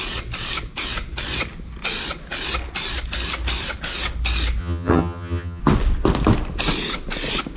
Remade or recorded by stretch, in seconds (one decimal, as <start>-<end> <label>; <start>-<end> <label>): 0.0-4.6 recorded; 4.6-5.6 remade; 5.6-7.6 recorded